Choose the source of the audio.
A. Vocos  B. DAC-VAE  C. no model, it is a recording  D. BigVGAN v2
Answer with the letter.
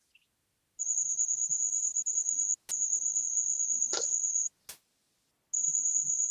C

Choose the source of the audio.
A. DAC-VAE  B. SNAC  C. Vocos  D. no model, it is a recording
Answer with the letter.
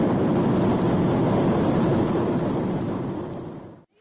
D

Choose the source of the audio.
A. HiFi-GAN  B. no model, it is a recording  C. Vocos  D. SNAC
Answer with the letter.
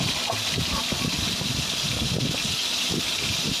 B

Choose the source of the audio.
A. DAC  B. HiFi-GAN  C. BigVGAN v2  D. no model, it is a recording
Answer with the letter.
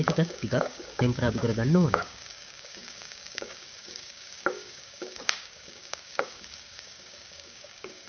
A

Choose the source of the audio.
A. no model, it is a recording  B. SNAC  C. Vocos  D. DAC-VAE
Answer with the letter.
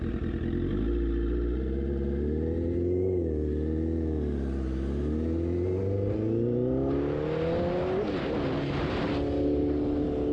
A